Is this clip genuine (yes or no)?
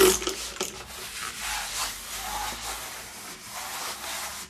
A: yes